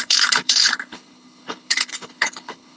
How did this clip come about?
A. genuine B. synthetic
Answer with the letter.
B